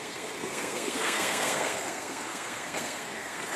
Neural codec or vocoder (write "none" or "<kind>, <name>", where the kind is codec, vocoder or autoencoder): codec, SNAC